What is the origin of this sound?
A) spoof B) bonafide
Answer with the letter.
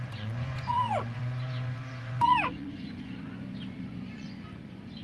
A